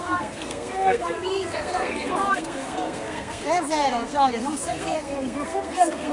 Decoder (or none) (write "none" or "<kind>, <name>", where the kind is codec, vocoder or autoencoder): codec, SNAC